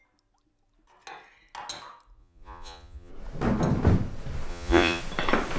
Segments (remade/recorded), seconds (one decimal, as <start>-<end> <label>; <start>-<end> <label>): 0.0-2.2 recorded; 2.2-3.1 remade; 3.1-4.5 recorded; 4.5-5.0 remade; 5.0-5.6 recorded